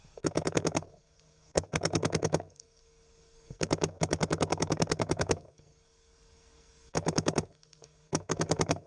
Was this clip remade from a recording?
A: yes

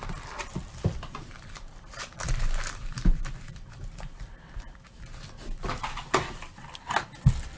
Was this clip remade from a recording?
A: no